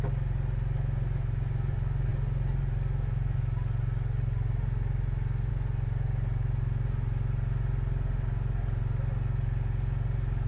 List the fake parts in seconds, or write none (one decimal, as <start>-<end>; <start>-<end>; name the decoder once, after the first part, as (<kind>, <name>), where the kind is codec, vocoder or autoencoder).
none